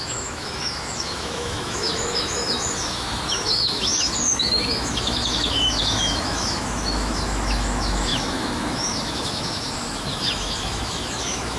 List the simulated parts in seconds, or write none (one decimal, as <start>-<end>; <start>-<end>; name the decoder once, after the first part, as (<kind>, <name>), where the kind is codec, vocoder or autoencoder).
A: 0.0-11.6 (autoencoder, DAC-VAE)